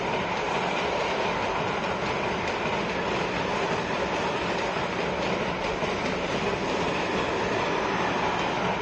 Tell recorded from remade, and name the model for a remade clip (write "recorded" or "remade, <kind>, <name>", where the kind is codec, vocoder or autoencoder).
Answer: recorded